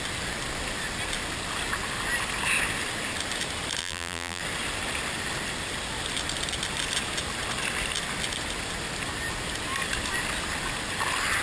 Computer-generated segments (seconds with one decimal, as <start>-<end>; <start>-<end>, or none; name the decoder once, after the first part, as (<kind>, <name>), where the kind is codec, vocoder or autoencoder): 3.8-4.4 (vocoder, BigVGAN v2)